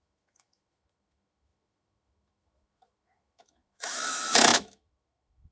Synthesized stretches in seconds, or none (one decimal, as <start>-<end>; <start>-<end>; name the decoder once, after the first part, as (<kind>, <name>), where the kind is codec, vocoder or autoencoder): 0.0-5.5 (autoencoder, DAC-VAE)